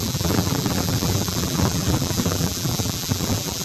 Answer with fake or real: fake